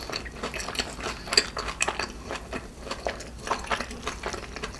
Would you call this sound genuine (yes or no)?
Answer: yes